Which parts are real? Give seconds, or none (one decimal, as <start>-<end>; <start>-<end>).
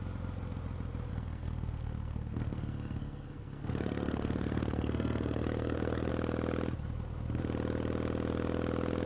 0.0-1.1; 6.1-9.1